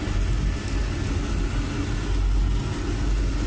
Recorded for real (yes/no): yes